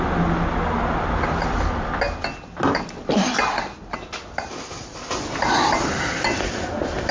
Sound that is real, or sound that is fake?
real